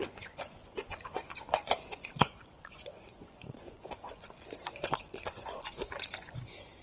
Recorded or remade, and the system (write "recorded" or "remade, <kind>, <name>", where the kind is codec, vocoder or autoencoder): remade, vocoder, Vocos